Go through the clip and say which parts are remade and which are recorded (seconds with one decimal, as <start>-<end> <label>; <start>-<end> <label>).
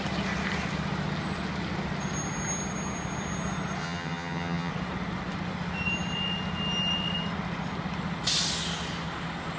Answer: 0.0-3.8 recorded; 3.8-4.7 remade; 4.7-9.6 recorded